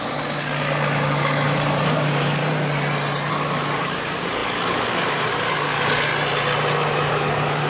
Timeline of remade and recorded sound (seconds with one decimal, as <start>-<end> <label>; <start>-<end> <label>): 0.0-2.4 remade; 2.4-3.3 recorded; 3.3-6.1 remade; 6.1-7.1 recorded; 7.1-7.7 remade